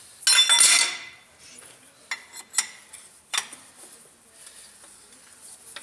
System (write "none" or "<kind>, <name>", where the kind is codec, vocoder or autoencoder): none